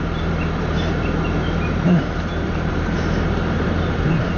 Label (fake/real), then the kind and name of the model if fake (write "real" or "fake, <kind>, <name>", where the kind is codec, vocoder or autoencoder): fake, vocoder, BigVGAN v2